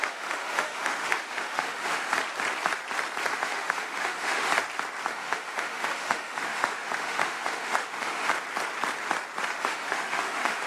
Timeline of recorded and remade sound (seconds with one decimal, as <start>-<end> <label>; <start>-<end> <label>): 0.0-2.1 remade; 2.1-3.3 recorded; 3.3-4.5 remade; 4.5-5.1 recorded; 5.1-8.3 remade; 8.3-9.6 recorded; 9.6-10.7 remade